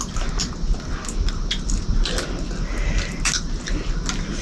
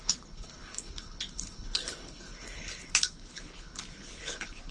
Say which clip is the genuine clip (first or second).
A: first